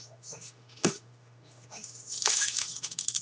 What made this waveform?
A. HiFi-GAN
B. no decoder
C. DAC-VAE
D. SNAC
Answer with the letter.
C